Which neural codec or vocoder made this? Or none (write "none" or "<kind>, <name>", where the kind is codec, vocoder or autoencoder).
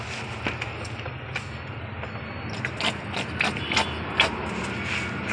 none